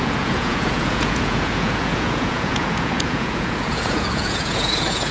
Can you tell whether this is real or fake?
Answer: fake